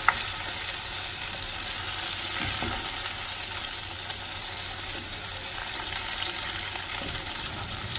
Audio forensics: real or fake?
real